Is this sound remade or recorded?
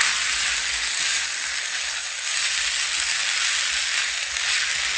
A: recorded